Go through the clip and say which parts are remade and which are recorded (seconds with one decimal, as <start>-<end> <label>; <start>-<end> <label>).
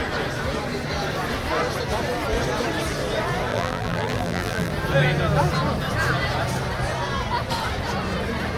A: 0.0-3.5 recorded; 3.5-4.7 remade; 4.7-8.6 recorded